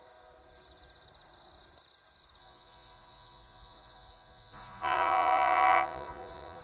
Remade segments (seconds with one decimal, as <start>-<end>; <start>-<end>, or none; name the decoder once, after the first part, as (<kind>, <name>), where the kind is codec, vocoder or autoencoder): 2.4-6.6 (vocoder, Vocos)